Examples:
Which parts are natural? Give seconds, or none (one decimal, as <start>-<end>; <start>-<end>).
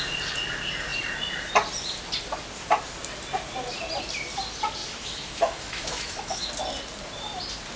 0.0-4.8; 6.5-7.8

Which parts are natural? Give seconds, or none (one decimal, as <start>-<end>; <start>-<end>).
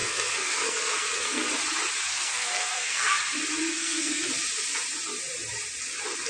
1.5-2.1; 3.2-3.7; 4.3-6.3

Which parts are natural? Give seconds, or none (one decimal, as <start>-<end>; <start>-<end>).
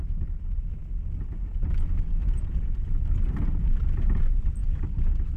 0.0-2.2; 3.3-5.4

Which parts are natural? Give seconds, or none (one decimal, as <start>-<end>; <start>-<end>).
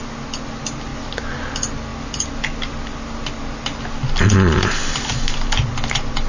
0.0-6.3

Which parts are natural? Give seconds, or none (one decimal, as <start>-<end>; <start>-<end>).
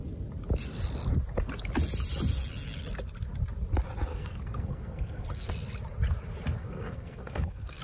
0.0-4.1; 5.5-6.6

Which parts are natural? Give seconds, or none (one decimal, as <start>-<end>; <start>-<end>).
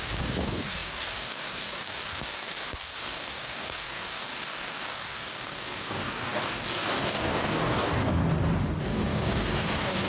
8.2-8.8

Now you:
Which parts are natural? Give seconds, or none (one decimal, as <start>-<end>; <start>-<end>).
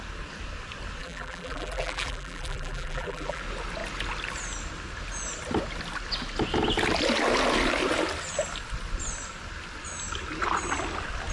0.0-1.0; 3.4-11.3